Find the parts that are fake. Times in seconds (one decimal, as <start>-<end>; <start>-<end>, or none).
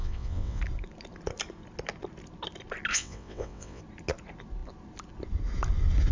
0.0-0.6; 2.9-3.8